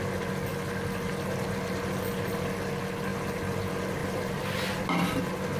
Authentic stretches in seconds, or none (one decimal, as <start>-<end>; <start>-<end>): 0.0-0.5; 2.7-4.0; 4.8-5.6